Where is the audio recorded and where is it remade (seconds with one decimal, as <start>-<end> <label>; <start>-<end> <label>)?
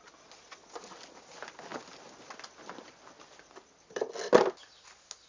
0.0-5.3 recorded